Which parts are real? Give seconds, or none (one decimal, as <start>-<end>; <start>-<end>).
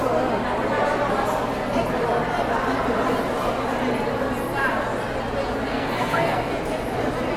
0.0-5.7; 6.5-7.4